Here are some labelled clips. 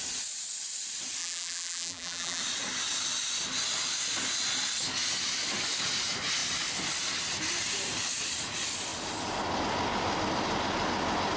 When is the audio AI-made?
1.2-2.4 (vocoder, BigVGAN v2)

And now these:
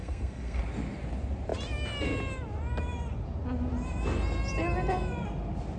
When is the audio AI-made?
0.0-0.6 (codec, SNAC)

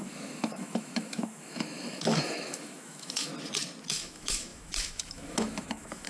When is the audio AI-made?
0.0-3.3 (autoencoder, DAC-VAE); 3.9-6.1